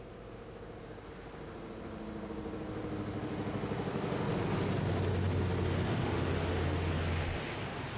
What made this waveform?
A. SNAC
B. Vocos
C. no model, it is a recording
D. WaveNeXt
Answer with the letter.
C